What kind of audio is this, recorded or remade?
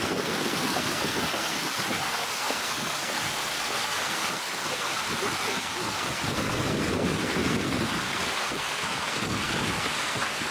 remade